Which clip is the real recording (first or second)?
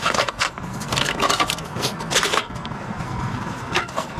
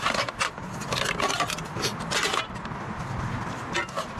second